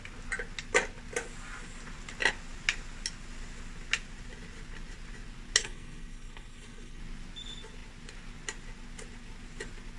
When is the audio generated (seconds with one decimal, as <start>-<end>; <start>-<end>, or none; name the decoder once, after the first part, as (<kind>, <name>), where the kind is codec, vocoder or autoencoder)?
5.6-7.0 (codec, SNAC)